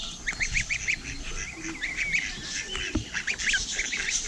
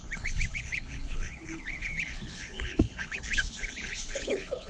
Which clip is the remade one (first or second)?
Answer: second